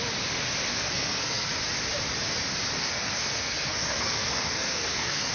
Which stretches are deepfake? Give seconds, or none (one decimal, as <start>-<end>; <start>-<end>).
0.7-1.5; 2.8-5.3